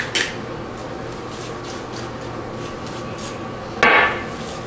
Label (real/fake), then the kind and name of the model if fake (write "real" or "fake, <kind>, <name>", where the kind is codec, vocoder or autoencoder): real